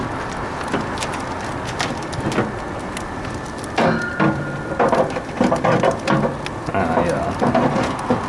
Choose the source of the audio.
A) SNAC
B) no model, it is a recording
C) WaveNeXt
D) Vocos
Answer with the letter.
B